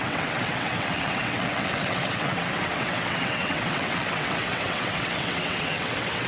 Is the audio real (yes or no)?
no